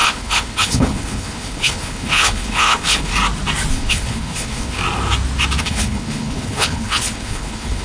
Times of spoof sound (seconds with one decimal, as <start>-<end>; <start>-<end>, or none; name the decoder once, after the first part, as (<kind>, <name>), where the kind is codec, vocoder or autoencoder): 0.0-3.1 (codec, HILCodec); 3.7-4.8; 5.6-7.8